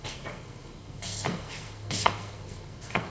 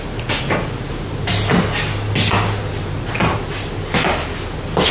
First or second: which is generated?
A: first